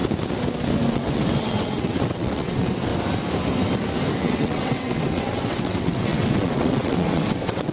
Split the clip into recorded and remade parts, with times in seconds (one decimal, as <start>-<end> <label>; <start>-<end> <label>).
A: 0.0-0.9 recorded; 0.9-2.9 remade; 2.9-4.2 recorded; 4.2-7.7 remade